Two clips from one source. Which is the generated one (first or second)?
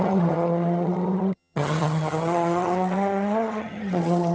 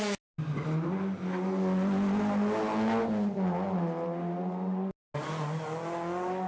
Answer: first